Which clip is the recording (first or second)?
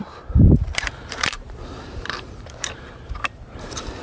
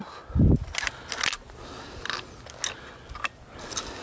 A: second